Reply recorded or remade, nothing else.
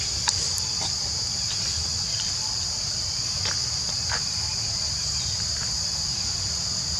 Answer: recorded